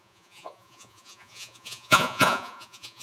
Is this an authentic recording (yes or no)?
no